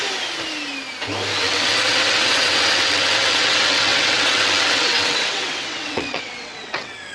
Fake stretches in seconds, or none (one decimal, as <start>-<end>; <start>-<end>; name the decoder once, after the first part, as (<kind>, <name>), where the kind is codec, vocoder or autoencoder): 1.4-7.1 (vocoder, WaveNeXt)